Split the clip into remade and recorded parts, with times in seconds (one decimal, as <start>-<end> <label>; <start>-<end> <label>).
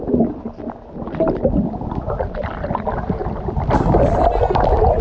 0.0-5.0 recorded